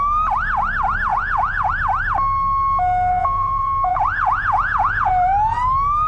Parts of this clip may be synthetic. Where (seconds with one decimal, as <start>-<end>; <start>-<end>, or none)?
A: 1.1-1.7; 3.1-5.1